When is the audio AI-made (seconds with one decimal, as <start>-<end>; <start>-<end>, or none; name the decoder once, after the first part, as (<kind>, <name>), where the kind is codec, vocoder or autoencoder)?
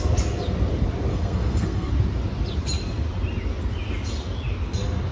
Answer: 1.1-1.9 (codec, SNAC)